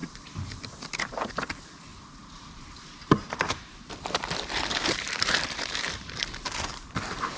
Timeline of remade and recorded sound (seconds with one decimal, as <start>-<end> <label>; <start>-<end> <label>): 0.0-1.3 remade; 1.3-1.9 recorded; 1.9-6.2 remade; 6.2-7.4 recorded